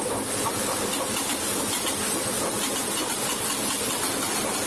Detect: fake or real real